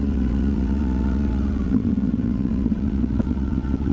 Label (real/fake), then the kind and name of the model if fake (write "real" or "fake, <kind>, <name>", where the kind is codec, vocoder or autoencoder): fake, vocoder, WaveNeXt